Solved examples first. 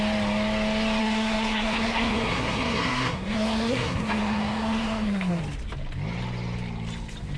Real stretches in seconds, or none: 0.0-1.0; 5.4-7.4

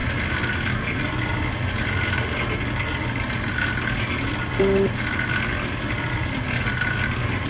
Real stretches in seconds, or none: 0.0-7.5

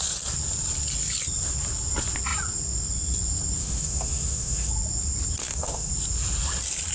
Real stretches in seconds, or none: 0.0-3.6; 4.7-5.4; 5.9-6.9

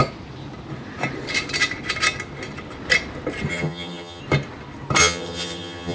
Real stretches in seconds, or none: 0.0-3.5; 4.2-5.0

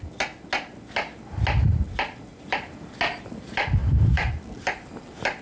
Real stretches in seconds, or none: 0.0-2.3; 2.8-3.8; 4.3-5.4

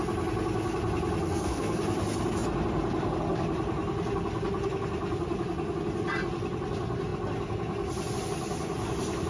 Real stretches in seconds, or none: 0.0-1.2; 1.8-9.3